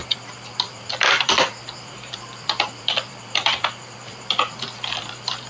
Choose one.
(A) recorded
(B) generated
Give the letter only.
B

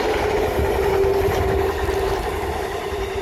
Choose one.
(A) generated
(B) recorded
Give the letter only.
B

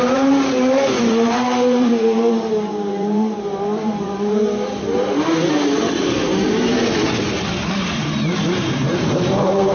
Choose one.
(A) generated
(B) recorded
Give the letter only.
A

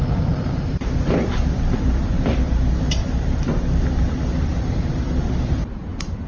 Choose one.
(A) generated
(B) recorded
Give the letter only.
A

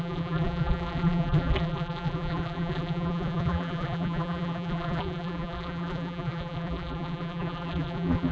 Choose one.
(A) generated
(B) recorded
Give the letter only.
A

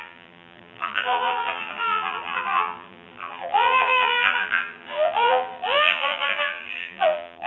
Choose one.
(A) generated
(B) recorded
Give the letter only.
A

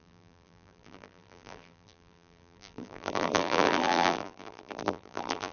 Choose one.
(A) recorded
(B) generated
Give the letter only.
B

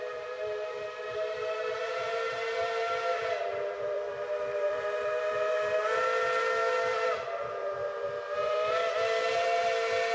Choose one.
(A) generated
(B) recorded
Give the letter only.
A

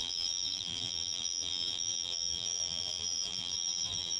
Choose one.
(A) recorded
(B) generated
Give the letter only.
B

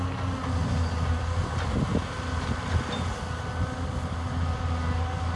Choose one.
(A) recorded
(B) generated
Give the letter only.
A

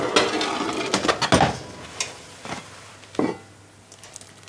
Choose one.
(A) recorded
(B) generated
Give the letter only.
A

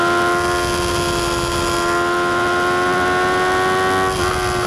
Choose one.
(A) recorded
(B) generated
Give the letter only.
A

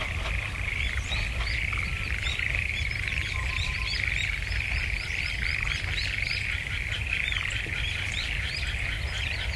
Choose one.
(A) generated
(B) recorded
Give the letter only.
A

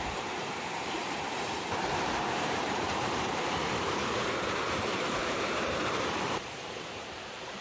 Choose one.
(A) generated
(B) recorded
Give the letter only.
A